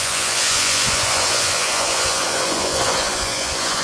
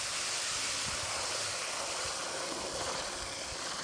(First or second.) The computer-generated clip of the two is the first